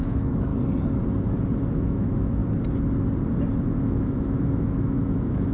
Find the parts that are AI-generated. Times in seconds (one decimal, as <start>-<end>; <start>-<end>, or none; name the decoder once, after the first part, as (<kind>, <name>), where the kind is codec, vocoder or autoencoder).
0.0-0.5 (autoencoder, DAC-VAE); 1.7-2.4; 3.8-5.5